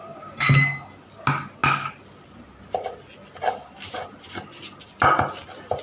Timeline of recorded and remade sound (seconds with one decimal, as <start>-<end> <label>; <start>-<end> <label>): 0.0-5.8 recorded